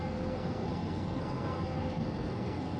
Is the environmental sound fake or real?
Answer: fake